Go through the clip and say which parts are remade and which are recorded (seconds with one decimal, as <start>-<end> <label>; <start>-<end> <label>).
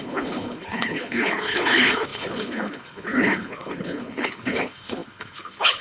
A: 0.0-5.8 remade